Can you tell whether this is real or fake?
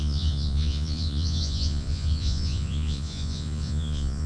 fake